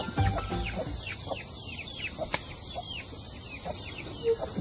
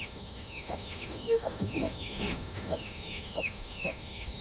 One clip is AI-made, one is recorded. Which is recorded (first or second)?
first